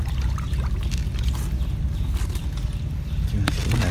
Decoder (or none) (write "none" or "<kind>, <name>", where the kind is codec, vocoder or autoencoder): vocoder, BigVGAN v2